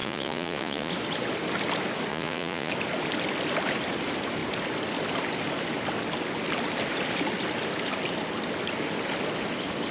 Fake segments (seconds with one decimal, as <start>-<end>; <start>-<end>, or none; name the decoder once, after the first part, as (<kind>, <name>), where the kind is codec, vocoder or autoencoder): 0.0-0.9 (vocoder, Vocos); 2.1-2.7